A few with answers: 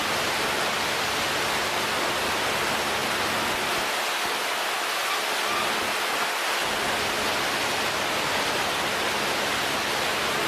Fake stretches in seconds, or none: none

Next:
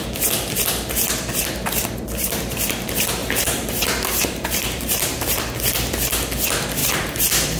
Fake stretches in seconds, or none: 3.2-5.5 (vocoder, BigVGAN v2); 6.8-7.6

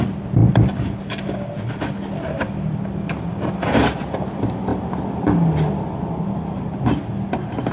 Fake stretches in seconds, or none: 0.4-1.8 (vocoder, BigVGAN v2); 4.7-6.0

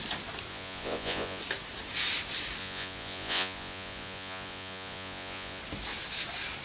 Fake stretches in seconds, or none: 0.5-1.4 (vocoder, Vocos); 2.6-5.6

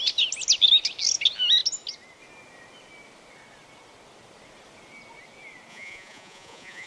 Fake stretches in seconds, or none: 5.7-6.9 (vocoder, Vocos)

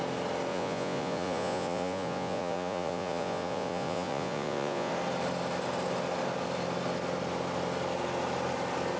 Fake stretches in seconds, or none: 0.5-4.9 (vocoder, Vocos)